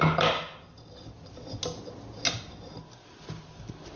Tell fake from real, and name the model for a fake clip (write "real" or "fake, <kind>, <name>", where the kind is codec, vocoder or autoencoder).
real